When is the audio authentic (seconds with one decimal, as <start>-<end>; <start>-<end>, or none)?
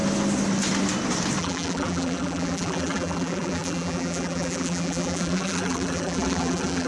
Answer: 0.0-1.4